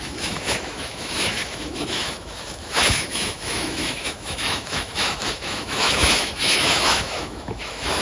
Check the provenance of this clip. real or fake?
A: fake